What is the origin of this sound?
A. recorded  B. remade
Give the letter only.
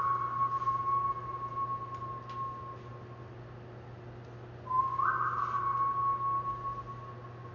A